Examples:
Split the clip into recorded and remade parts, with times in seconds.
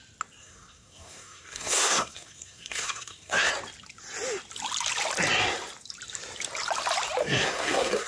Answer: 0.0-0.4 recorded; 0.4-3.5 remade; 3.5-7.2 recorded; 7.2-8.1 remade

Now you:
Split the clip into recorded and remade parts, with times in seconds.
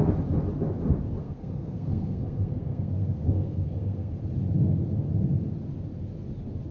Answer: 0.0-1.2 recorded; 1.2-4.1 remade; 4.1-6.7 recorded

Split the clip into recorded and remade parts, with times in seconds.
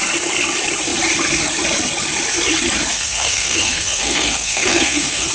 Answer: 0.0-2.9 recorded; 2.9-5.3 remade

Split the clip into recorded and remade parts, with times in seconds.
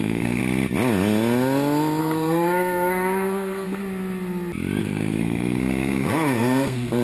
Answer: 0.0-0.4 remade; 0.4-2.0 recorded; 2.0-3.8 remade; 3.8-4.8 recorded; 4.8-7.0 remade